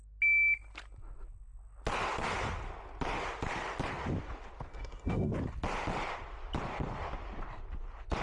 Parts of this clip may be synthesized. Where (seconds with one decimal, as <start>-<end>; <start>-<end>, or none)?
4.7-5.3